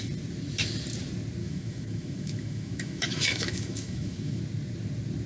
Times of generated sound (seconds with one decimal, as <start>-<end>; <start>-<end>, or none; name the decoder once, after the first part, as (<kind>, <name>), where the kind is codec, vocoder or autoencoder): 1.4-4.4 (autoencoder, DAC-VAE)